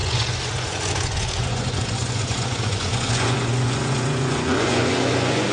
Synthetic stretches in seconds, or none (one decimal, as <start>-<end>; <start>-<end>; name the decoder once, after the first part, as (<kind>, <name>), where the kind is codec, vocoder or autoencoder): 0.0-5.5 (vocoder, Vocos)